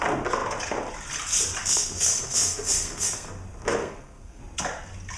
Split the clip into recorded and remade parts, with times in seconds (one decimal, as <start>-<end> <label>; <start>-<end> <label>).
0.0-1.6 recorded; 1.6-3.3 remade; 3.3-3.8 recorded; 3.8-4.4 remade; 4.4-5.2 recorded